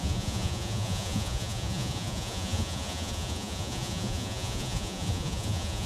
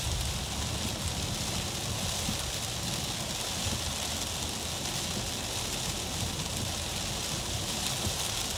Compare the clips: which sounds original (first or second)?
second